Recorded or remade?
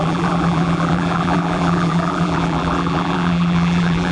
remade